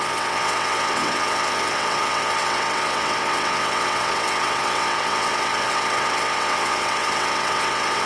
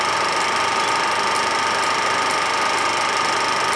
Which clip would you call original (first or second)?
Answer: second